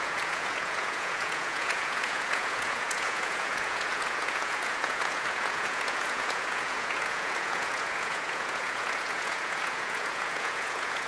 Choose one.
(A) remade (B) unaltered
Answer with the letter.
A